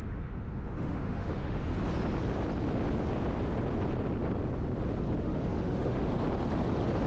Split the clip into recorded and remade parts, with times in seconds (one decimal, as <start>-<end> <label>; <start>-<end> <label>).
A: 0.0-1.7 remade; 1.7-5.2 recorded; 5.2-6.1 remade; 6.1-7.1 recorded